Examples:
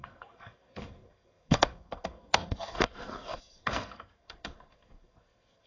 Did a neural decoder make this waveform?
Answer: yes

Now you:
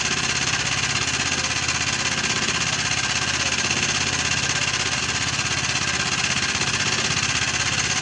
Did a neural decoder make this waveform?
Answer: no